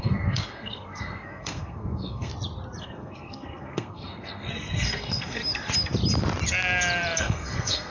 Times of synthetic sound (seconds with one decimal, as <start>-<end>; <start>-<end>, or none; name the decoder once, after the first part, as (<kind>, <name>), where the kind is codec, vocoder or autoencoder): 0.0-2.3 (codec, SNAC); 2.8-5.4; 7.2-7.9

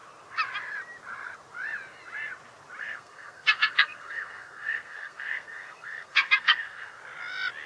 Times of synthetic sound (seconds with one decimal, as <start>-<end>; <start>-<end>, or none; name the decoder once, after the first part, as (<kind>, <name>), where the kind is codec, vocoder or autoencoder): 2.8-7.0 (codec, SNAC)

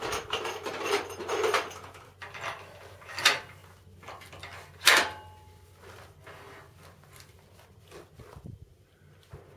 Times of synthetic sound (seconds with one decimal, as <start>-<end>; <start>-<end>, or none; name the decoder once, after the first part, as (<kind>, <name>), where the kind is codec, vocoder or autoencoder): none